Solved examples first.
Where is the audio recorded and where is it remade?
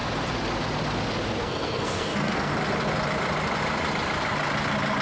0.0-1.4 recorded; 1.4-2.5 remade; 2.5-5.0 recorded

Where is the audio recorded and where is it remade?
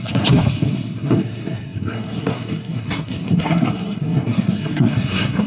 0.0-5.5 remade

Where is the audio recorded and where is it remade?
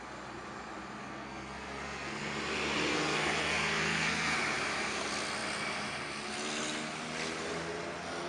0.0-1.0 recorded; 1.0-2.2 remade; 2.2-2.9 recorded; 2.9-4.4 remade; 4.4-8.3 recorded